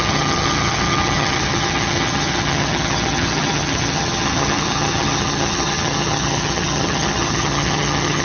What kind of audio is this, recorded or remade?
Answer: remade